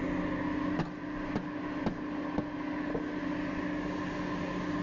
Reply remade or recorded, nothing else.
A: recorded